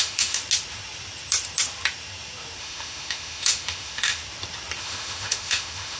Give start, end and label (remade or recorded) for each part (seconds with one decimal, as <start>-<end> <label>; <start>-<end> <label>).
0.0-0.4 remade; 0.4-2.6 recorded; 2.6-4.2 remade; 4.2-4.8 recorded; 4.8-6.0 remade